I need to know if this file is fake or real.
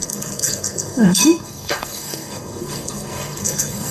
fake